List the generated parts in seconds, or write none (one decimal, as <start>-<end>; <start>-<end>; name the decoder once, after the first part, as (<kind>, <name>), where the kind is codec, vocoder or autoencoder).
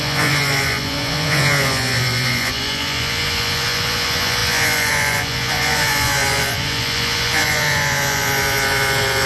0.0-9.3 (vocoder, Vocos)